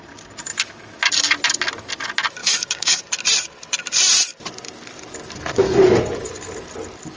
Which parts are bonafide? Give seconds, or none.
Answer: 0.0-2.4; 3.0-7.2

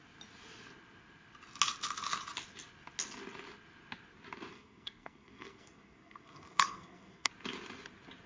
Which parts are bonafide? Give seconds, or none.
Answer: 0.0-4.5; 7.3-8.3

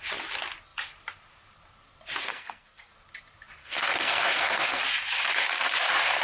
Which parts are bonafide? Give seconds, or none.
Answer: 0.0-2.3; 2.9-3.6; 4.8-6.2

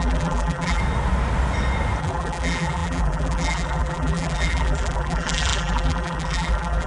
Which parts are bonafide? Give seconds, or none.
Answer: 0.8-2.0

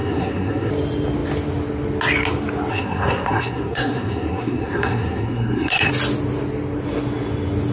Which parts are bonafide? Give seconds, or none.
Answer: 0.7-2.7; 5.9-7.7

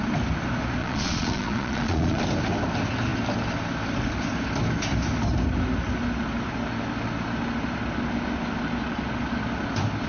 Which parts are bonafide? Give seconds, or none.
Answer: 0.0-0.8; 2.2-10.1

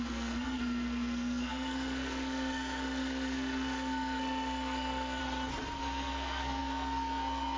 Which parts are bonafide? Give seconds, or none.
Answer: 5.2-5.8